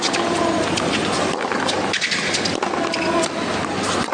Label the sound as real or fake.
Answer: real